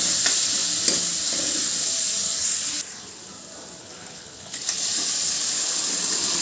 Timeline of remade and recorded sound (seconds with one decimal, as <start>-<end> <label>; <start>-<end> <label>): 0.0-3.8 recorded; 3.8-4.6 remade; 4.6-6.4 recorded